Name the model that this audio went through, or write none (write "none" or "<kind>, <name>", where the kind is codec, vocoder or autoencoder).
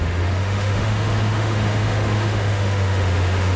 autoencoder, DAC-VAE